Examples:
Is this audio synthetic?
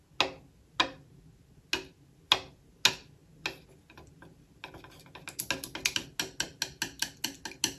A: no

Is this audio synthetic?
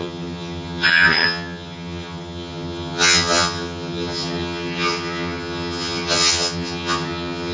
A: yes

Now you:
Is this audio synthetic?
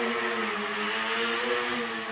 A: no